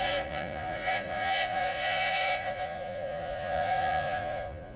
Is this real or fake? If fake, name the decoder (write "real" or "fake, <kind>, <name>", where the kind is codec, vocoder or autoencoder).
fake, vocoder, Vocos